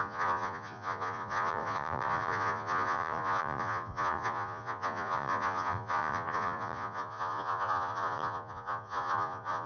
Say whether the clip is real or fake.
fake